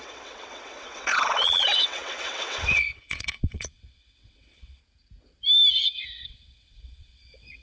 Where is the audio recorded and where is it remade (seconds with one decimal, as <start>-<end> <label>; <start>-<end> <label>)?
0.0-4.8 remade; 4.8-5.7 recorded; 5.7-7.6 remade